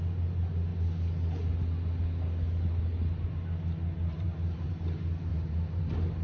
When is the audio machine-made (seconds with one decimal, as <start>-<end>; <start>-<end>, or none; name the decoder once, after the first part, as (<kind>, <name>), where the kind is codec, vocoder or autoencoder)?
4.0-4.8 (vocoder, BigVGAN v2); 5.3-5.8